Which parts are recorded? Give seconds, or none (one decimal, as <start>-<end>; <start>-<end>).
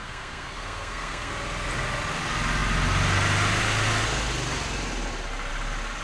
1.3-6.0